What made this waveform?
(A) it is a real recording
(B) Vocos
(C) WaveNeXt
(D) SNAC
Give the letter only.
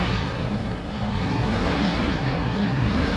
D